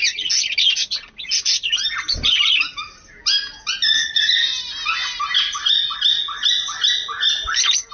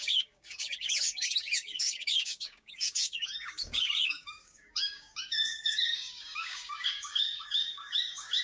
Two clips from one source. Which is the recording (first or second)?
first